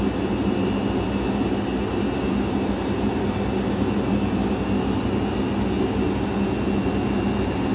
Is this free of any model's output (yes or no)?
yes